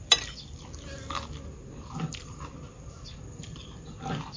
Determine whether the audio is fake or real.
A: real